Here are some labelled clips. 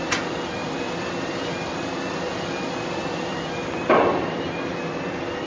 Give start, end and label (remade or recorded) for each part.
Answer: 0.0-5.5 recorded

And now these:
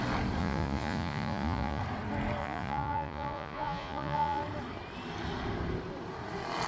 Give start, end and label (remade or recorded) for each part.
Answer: 0.0-0.4 recorded; 0.4-1.8 remade; 1.8-2.4 recorded; 2.4-4.4 remade; 4.4-6.7 recorded

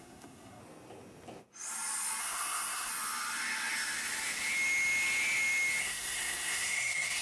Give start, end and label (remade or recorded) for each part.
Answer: 0.0-0.6 remade; 0.6-2.2 recorded; 2.2-2.9 remade; 2.9-5.8 recorded; 5.8-7.2 remade

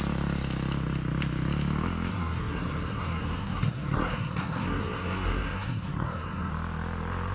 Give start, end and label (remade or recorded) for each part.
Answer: 0.0-2.1 recorded; 2.1-6.5 remade; 6.5-7.3 recorded

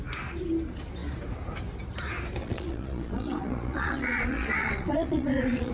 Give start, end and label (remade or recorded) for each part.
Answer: 0.0-2.4 recorded; 2.4-5.7 remade

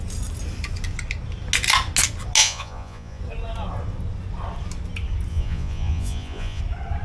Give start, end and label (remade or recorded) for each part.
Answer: 0.0-2.4 recorded; 2.4-3.2 remade; 3.2-5.3 recorded; 5.3-6.6 remade; 6.6-7.0 recorded

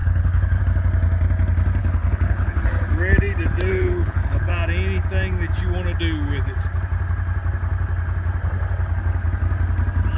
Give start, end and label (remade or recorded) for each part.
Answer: 0.0-0.6 remade; 0.6-1.8 recorded; 1.8-2.6 remade; 2.6-3.7 recorded; 3.7-4.5 remade; 4.5-10.2 recorded

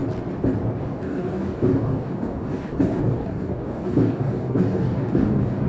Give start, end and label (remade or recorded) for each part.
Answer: 0.0-0.8 recorded; 0.8-5.7 remade